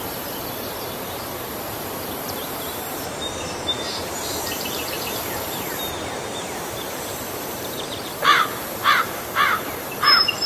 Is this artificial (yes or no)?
yes